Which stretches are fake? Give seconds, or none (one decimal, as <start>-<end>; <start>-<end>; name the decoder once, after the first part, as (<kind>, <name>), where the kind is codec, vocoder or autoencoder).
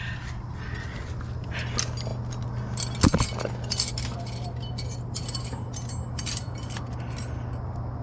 none